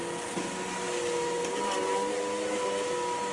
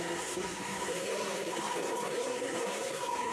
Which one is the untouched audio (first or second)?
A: first